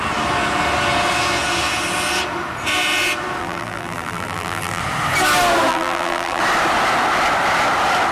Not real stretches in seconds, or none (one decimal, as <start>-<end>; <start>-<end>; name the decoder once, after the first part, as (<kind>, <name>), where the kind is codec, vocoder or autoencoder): 3.4-4.8 (vocoder, BigVGAN v2); 5.7-6.4